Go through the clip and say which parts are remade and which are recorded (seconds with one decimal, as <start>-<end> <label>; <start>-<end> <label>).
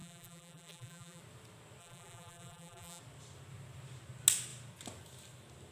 0.0-1.2 remade; 1.2-1.8 recorded; 1.8-3.0 remade; 3.0-5.7 recorded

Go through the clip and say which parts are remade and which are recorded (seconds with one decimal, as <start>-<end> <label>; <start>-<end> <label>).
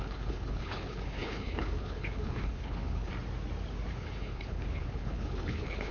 0.0-3.1 remade; 3.1-3.9 recorded; 3.9-5.9 remade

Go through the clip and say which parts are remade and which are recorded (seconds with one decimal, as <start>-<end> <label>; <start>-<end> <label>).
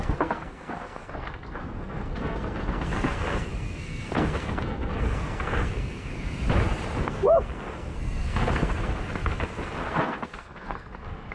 0.0-6.1 remade; 6.1-7.0 recorded; 7.0-11.3 remade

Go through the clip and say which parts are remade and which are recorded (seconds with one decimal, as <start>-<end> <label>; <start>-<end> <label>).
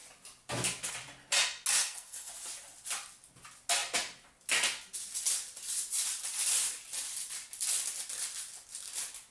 0.0-1.8 recorded; 1.8-2.3 remade; 2.3-9.3 recorded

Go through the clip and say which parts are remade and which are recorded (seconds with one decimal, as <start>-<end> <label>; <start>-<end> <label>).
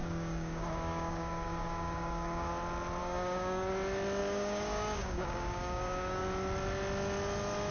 0.0-2.5 remade; 2.5-3.0 recorded; 3.0-3.7 remade; 3.7-4.2 recorded; 4.2-6.2 remade; 6.2-7.7 recorded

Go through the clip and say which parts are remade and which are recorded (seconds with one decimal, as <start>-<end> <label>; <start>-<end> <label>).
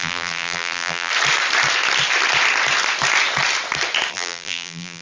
0.0-1.1 remade; 1.1-4.1 recorded; 4.1-5.0 remade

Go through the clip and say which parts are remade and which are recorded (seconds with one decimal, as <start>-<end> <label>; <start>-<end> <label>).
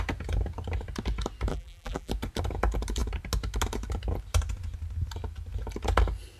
0.0-1.5 recorded; 1.5-2.1 remade; 2.1-6.4 recorded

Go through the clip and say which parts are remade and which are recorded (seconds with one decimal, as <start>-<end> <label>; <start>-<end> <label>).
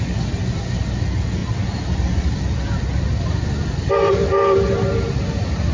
0.0-5.7 recorded